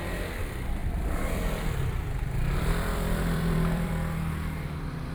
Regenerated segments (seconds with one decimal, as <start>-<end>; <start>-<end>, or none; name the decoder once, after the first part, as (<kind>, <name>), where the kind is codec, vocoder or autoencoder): 0.8-3.9 (vocoder, BigVGAN v2)